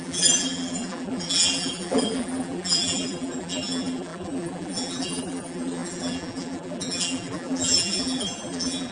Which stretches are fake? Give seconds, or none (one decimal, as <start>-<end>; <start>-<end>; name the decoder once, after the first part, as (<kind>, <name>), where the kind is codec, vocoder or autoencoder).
0.0-8.9 (vocoder, BigVGAN v2)